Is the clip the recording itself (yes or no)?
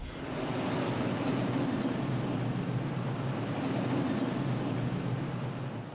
yes